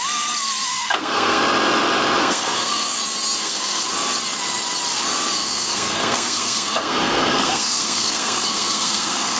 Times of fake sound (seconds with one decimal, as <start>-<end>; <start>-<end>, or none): 0.7-1.4; 2.2-3.0; 3.4-3.9; 5.4-9.4